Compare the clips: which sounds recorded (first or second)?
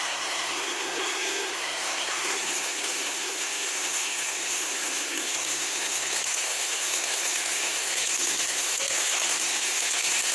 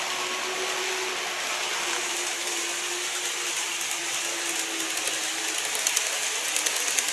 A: second